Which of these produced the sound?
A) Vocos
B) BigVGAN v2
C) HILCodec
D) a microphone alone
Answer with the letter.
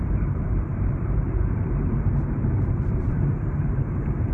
B